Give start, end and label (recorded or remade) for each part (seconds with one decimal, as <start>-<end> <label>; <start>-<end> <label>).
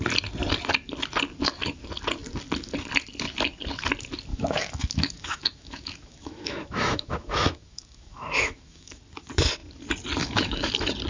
0.0-4.3 recorded; 4.3-9.0 remade; 9.0-10.2 recorded; 10.2-10.7 remade; 10.7-11.1 recorded